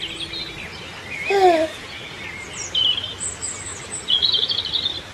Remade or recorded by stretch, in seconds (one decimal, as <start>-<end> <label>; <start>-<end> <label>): 0.0-1.7 recorded; 1.7-2.2 remade; 2.2-3.7 recorded; 3.7-4.6 remade; 4.6-5.1 recorded